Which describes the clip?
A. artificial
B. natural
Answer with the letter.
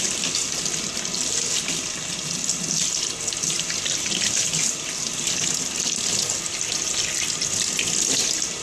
B